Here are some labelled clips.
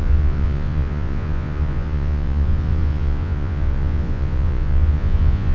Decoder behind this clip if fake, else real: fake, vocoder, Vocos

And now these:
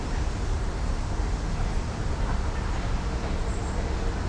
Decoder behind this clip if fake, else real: real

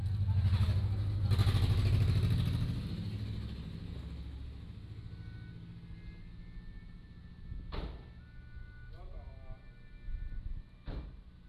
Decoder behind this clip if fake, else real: real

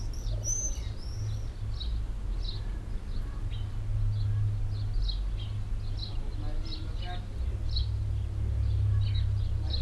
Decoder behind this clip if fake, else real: real